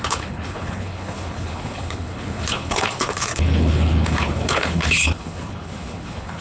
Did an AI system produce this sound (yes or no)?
yes